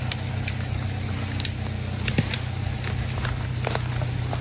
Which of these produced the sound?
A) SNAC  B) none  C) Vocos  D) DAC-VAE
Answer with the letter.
B